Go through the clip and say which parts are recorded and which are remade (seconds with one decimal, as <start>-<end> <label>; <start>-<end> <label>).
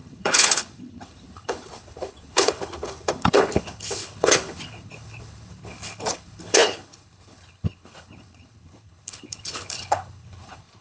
0.0-10.8 remade